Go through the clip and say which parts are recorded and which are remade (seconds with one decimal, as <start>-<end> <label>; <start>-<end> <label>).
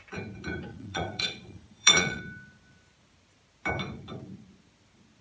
0.0-0.7 recorded; 0.7-2.2 remade; 2.2-5.2 recorded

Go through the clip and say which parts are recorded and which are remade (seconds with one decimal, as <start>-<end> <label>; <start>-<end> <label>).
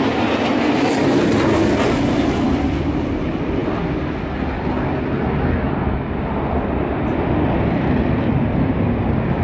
0.0-9.4 recorded